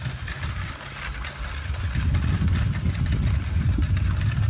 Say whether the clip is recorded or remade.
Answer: recorded